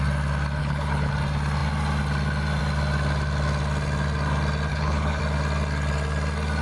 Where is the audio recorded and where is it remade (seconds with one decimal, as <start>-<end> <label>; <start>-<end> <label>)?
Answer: 0.0-0.6 recorded; 0.6-1.1 remade; 1.1-4.7 recorded; 4.7-5.2 remade; 5.2-6.6 recorded